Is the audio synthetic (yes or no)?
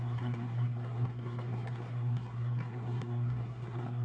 yes